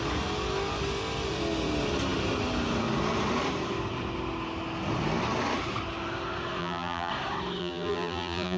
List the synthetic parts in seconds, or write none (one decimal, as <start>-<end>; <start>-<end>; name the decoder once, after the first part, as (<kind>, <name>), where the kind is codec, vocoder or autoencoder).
6.6-7.1 (vocoder, BigVGAN v2); 7.6-8.6